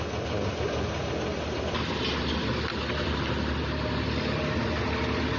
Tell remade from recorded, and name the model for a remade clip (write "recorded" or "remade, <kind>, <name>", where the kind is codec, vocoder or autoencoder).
recorded